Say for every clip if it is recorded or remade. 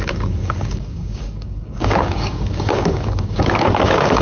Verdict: remade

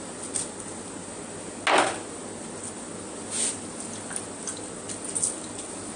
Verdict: recorded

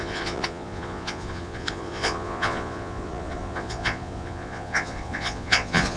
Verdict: remade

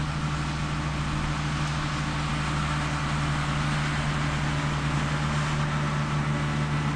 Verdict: recorded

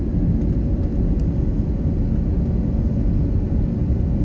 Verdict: recorded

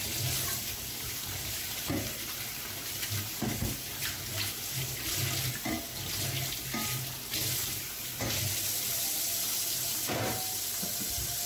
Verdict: recorded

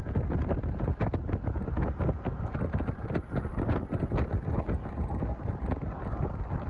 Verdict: recorded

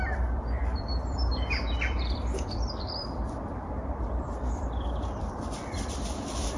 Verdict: remade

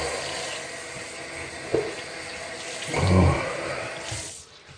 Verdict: recorded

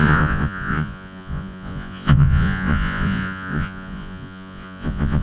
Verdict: remade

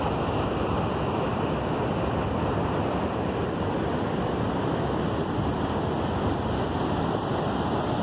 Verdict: recorded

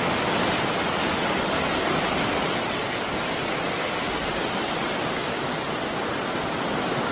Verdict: recorded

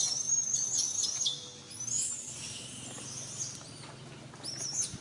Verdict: recorded